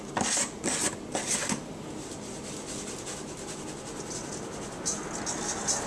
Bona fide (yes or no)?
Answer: yes